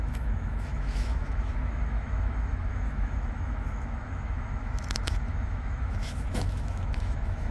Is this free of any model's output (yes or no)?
no